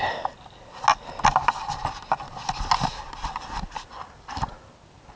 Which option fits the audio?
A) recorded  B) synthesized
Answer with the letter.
A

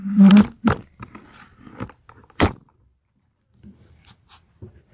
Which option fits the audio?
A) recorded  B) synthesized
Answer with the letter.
B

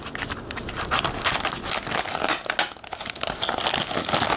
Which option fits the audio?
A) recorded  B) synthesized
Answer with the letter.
A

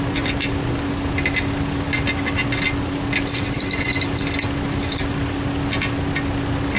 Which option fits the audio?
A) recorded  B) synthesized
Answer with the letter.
A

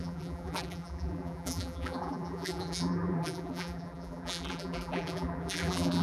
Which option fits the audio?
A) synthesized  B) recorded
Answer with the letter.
A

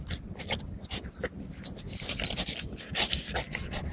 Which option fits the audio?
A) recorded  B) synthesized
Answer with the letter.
A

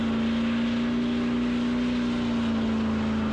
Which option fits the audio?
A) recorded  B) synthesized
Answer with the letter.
A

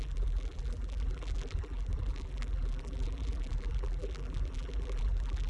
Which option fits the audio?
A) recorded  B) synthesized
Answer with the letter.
B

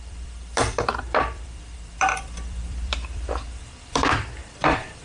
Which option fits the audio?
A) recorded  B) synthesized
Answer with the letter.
B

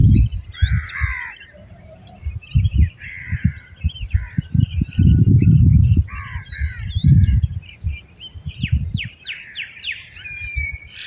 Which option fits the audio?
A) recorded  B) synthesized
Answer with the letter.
B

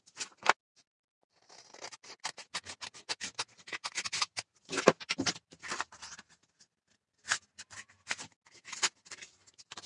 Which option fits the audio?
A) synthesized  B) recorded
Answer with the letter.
B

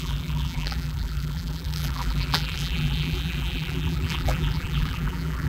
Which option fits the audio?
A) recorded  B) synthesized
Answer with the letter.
B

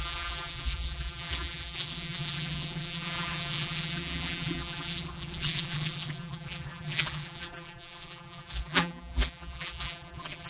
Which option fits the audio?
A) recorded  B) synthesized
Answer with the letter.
B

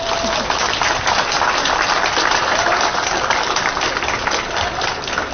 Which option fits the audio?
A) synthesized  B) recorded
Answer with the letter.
A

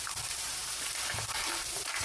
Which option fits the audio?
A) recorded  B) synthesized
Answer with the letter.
B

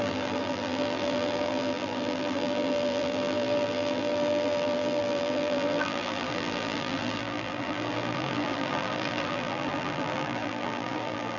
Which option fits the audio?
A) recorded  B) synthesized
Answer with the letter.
B